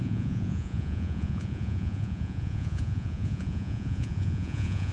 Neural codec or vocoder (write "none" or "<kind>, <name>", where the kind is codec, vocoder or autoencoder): vocoder, Vocos